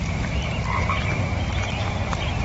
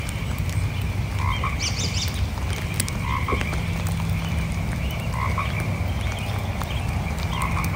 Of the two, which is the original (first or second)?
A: second